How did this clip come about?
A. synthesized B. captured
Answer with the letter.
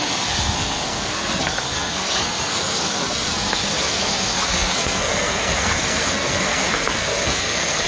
A